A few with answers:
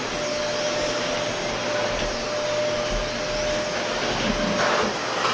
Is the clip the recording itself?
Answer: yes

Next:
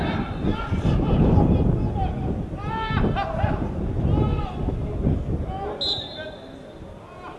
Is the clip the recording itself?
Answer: yes